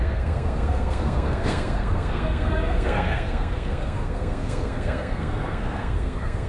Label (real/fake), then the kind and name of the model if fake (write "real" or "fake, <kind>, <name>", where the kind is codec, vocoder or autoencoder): fake, codec, SNAC